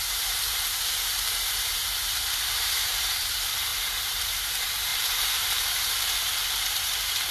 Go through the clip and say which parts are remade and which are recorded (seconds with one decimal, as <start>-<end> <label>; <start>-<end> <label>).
0.0-7.3 remade